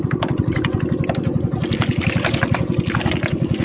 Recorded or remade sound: recorded